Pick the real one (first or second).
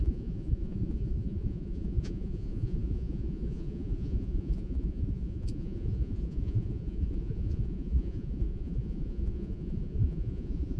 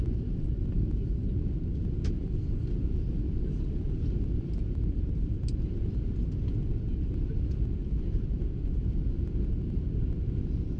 second